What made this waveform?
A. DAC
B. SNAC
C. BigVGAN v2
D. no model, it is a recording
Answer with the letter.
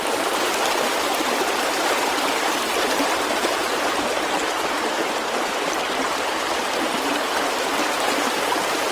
C